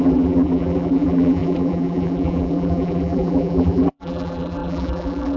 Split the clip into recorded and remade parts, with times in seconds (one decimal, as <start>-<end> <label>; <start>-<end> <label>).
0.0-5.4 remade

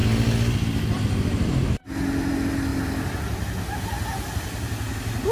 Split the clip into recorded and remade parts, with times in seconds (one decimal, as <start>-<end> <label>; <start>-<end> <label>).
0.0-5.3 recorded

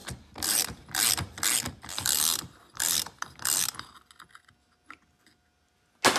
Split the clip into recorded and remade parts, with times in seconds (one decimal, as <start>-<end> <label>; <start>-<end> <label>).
0.0-0.8 remade; 0.8-2.3 recorded; 2.3-3.1 remade; 3.1-6.2 recorded